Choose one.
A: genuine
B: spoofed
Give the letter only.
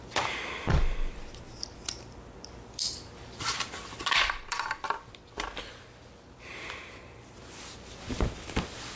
A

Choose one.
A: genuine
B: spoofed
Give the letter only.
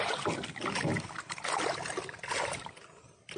A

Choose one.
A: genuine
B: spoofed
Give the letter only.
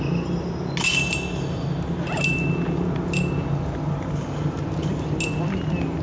A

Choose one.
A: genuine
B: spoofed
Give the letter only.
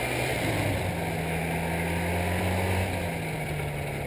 A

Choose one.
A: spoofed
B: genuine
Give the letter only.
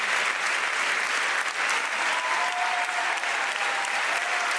B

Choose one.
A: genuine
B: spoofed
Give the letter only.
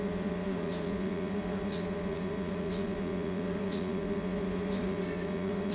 B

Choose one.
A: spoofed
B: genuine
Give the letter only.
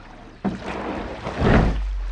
B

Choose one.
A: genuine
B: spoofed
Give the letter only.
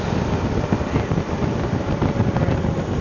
A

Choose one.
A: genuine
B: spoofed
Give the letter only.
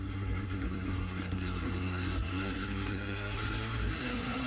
B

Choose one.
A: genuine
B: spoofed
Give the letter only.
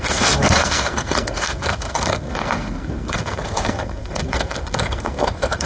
B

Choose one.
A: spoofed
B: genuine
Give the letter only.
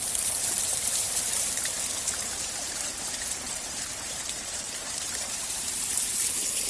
A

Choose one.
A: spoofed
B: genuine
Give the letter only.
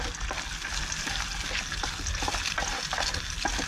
B